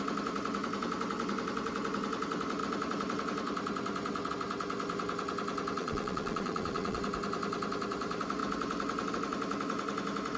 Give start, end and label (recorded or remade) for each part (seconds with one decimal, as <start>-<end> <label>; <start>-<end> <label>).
0.0-5.8 recorded; 5.8-7.0 remade; 7.0-10.4 recorded

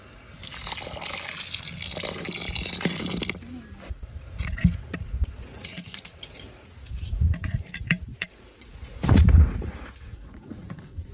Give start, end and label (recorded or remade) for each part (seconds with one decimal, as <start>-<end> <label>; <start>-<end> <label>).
0.0-0.4 remade; 0.4-3.9 recorded; 3.9-11.1 remade

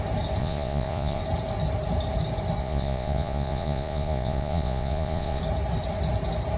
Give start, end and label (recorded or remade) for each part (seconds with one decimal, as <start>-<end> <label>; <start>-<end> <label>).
0.0-0.4 recorded; 0.4-1.2 remade; 1.2-2.6 recorded; 2.6-5.4 remade; 5.4-6.6 recorded

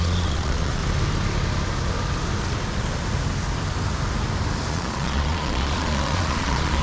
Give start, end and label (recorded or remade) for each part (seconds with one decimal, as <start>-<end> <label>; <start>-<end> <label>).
0.0-0.8 remade; 0.8-4.7 recorded; 4.7-6.8 remade